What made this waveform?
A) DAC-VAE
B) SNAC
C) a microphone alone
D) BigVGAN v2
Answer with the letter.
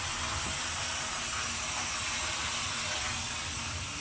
C